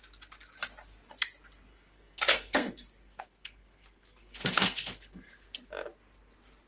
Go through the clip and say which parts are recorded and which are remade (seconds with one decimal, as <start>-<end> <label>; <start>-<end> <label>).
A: 0.0-1.7 recorded; 1.7-5.7 remade; 5.7-6.7 recorded